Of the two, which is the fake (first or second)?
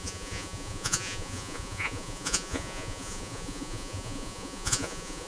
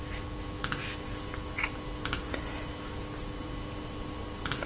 first